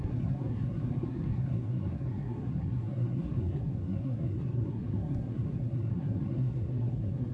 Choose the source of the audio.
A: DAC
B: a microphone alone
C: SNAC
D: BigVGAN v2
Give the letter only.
C